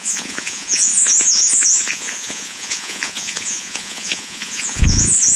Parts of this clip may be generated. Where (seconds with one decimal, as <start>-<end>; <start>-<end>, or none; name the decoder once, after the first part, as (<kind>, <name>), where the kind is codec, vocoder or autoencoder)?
0.0-5.4 (vocoder, Vocos)